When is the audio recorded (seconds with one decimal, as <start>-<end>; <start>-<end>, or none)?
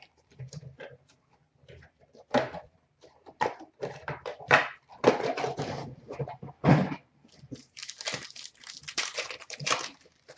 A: 7.8-9.0